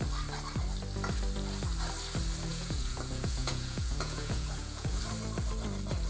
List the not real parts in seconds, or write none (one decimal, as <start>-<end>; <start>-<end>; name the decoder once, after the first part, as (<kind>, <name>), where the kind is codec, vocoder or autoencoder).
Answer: 2.5-5.0 (vocoder, Vocos)